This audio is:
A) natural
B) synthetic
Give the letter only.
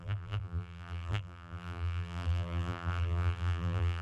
B